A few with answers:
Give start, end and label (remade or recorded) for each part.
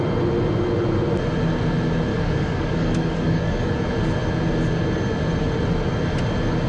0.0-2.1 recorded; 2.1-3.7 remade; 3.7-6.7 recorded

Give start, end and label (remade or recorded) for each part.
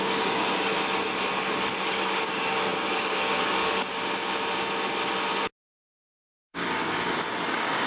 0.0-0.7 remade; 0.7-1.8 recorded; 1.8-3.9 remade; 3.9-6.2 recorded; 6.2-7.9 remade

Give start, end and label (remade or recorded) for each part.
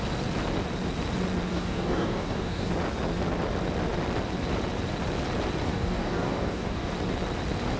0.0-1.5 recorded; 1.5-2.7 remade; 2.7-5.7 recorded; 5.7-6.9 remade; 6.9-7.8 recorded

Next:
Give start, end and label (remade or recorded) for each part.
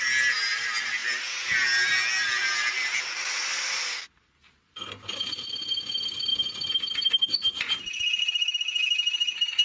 0.0-9.6 recorded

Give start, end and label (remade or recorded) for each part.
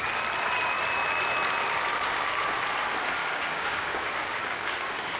0.0-1.9 recorded; 1.9-2.6 remade; 2.6-3.2 recorded; 3.2-5.2 remade